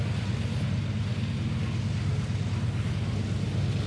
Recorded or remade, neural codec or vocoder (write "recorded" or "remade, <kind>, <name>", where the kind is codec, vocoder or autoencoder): recorded